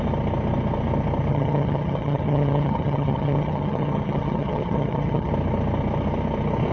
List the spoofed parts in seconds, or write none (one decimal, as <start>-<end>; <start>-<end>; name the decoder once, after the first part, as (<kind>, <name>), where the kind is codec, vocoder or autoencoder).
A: 1.3-5.3 (vocoder, HiFi-GAN)